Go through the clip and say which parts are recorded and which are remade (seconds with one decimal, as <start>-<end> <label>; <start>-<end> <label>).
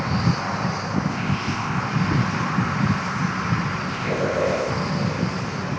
0.0-1.1 recorded; 1.1-1.8 remade; 1.8-3.9 recorded; 3.9-4.7 remade; 4.7-5.8 recorded